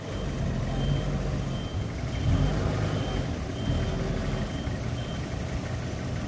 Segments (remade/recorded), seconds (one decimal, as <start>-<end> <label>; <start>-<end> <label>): 0.0-6.3 recorded